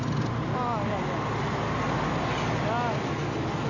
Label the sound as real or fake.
real